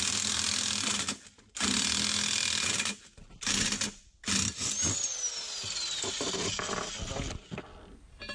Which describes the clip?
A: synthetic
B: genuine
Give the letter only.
B